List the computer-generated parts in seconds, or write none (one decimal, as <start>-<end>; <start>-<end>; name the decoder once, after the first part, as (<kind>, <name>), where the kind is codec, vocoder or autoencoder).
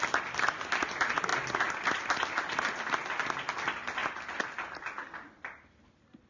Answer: none